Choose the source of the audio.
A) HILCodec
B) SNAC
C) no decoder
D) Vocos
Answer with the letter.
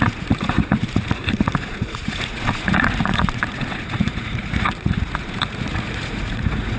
D